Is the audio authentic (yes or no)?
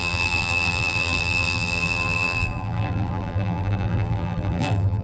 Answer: no